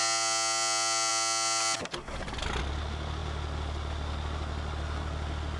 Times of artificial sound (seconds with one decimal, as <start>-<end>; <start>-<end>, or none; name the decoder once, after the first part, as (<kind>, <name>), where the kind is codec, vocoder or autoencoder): none